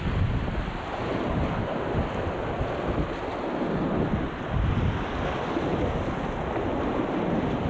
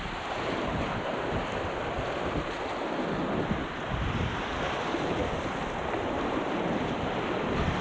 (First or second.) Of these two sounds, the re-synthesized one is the second